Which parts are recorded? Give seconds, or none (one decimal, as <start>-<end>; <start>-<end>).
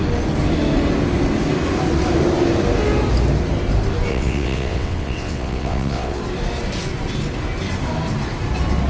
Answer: 0.0-4.1; 6.2-8.9